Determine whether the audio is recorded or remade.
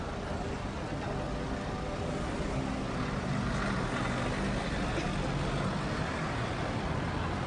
recorded